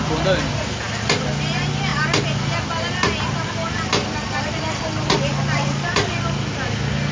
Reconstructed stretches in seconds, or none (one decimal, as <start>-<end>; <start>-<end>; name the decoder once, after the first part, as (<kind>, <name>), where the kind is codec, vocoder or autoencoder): none